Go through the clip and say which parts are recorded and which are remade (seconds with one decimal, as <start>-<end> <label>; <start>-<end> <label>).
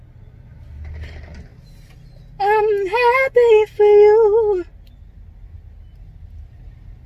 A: 0.0-7.1 recorded